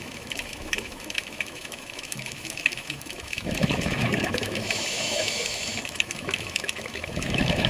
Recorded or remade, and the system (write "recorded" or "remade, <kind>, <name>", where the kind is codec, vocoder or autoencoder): remade, autoencoder, DAC-VAE